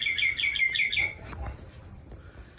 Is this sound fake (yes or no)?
no